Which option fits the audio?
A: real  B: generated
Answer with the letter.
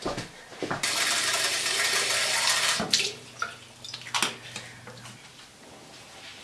A